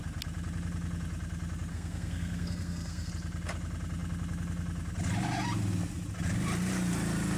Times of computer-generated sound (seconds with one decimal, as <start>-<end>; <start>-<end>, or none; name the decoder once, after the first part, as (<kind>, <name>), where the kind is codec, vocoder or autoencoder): 1.7-3.1 (codec, SNAC)

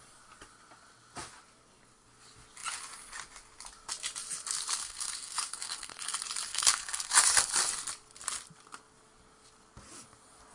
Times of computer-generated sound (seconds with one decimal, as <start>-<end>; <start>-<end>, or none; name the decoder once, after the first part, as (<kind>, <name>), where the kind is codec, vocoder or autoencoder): 4.8-5.9 (codec, SNAC); 6.5-7.1